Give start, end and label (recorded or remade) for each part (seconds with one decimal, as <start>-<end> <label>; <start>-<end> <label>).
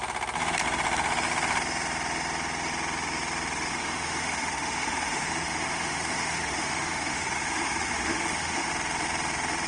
0.0-3.7 recorded; 3.7-8.7 remade; 8.7-9.7 recorded